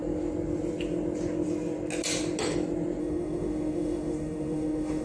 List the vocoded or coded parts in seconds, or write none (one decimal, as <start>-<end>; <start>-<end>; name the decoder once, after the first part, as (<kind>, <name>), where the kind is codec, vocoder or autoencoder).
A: 3.0-5.0 (autoencoder, DAC-VAE)

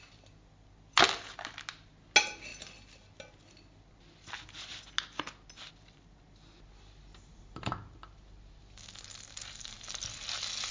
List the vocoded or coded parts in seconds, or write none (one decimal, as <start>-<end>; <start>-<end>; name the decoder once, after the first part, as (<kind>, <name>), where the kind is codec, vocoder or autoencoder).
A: none